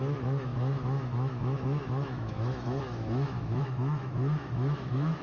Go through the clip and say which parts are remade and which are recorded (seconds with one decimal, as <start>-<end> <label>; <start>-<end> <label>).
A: 0.0-5.2 remade